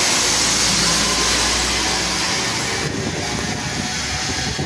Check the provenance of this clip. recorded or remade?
recorded